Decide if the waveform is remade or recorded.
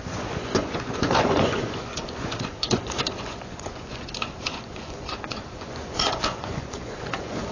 remade